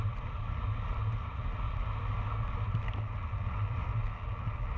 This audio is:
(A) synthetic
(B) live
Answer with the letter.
B